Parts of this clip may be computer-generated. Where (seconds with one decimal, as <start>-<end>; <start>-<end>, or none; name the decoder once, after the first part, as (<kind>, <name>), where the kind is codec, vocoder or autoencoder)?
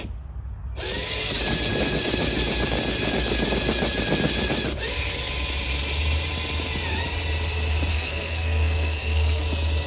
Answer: 7.9-9.4 (codec, SNAC)